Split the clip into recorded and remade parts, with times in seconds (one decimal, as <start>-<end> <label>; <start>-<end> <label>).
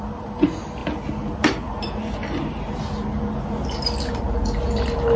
0.0-5.2 recorded